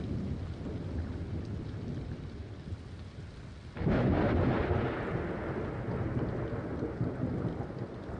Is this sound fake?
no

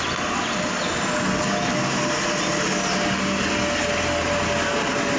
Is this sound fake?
no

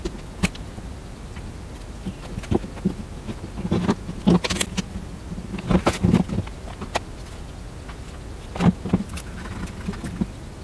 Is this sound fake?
no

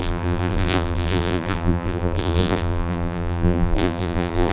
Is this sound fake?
yes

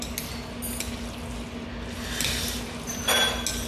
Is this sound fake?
no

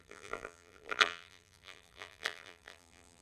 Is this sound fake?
yes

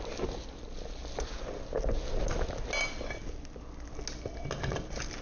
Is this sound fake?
no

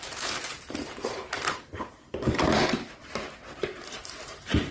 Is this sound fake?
yes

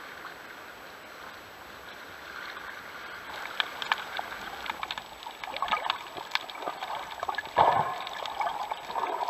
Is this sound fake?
no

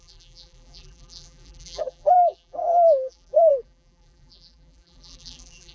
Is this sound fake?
yes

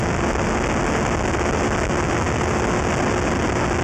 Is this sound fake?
no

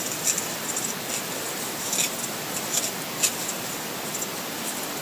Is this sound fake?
no